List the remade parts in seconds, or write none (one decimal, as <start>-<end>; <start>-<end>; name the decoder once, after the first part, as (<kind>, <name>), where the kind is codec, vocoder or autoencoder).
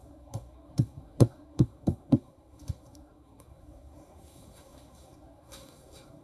0.0-6.2 (codec, SNAC)